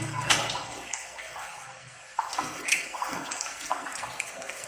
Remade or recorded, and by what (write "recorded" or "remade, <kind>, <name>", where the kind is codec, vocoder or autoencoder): remade, codec, SNAC